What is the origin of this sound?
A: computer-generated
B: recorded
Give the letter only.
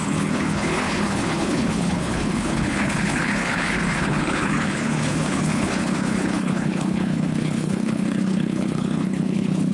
A